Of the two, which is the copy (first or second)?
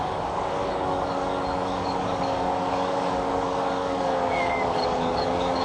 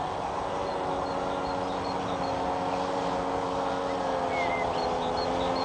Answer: first